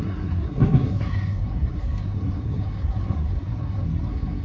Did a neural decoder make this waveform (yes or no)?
yes